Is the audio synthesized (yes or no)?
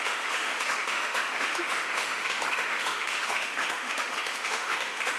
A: yes